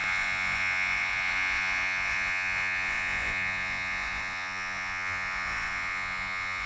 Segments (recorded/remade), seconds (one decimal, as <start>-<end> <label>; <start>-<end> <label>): 0.0-6.7 remade